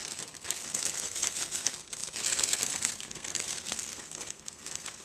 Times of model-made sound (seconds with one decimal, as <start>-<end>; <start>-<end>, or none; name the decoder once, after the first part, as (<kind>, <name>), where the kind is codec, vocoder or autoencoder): 0.0-5.0 (codec, SNAC)